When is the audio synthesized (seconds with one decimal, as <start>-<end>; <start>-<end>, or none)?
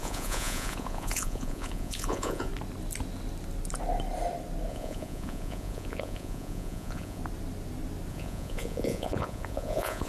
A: 0.0-2.5; 4.7-7.2; 8.1-10.1